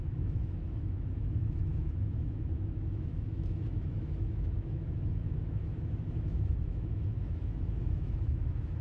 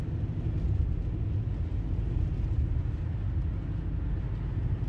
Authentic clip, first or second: second